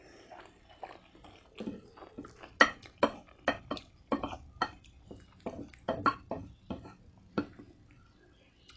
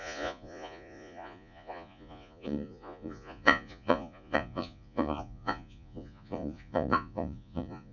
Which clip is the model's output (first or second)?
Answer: second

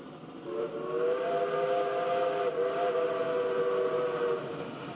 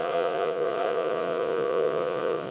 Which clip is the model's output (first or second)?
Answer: second